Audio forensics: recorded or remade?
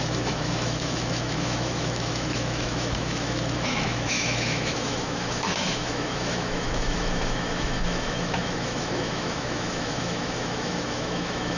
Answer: remade